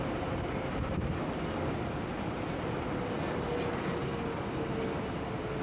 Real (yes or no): yes